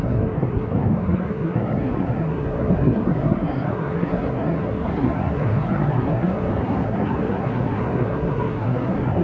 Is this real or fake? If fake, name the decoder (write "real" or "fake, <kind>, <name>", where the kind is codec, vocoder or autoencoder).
fake, codec, SNAC